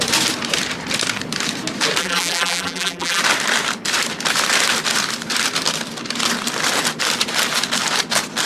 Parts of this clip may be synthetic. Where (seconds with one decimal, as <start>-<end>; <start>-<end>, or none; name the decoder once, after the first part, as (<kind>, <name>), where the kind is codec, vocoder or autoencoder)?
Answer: 2.0-3.2 (vocoder, BigVGAN v2)